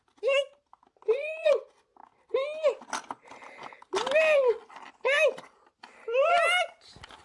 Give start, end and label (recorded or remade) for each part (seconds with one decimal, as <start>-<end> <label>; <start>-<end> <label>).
0.0-1.1 recorded; 1.1-1.6 remade; 1.6-7.2 recorded